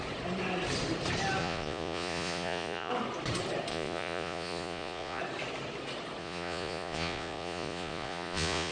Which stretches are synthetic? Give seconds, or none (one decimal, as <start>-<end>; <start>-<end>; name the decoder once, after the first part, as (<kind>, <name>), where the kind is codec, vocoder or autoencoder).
1.4-2.9 (vocoder, Vocos); 3.7-5.2; 6.2-8.7